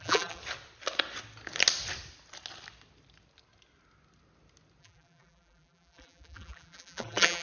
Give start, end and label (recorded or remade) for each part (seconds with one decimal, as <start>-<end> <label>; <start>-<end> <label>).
0.0-0.4 remade; 0.4-4.8 recorded; 4.8-7.4 remade